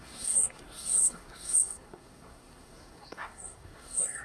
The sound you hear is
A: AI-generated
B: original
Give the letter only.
A